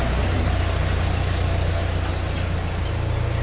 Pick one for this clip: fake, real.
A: real